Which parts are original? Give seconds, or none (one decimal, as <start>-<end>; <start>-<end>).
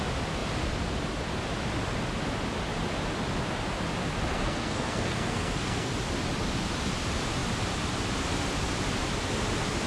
0.0-4.3; 5.9-9.9